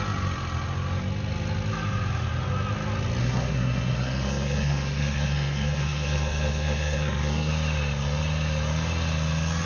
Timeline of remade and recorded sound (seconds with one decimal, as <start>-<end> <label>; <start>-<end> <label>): 0.0-3.2 recorded; 3.2-7.5 remade; 7.5-9.7 recorded